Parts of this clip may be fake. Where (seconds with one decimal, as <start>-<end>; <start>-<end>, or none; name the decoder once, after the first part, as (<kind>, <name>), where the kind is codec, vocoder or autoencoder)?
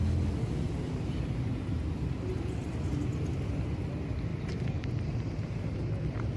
4.3-5.9 (vocoder, BigVGAN v2)